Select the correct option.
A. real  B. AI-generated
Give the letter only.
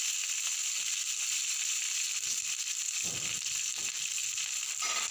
A